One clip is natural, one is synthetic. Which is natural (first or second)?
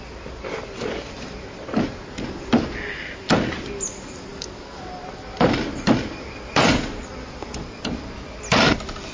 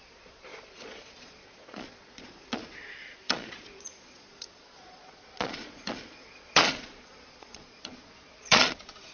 first